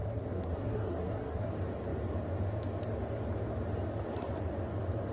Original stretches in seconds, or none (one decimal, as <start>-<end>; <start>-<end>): 1.5-5.1